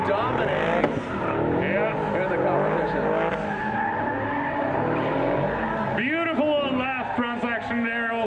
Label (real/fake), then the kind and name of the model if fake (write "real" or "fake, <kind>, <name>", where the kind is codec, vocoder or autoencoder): real